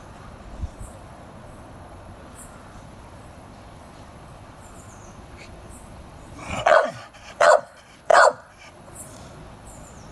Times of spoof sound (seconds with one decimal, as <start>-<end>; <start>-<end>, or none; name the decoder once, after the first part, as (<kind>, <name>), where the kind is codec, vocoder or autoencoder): 0.0-10.1 (vocoder, Vocos)